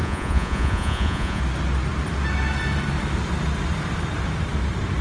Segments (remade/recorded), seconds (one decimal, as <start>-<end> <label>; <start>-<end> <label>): 0.0-1.4 remade; 1.4-5.0 recorded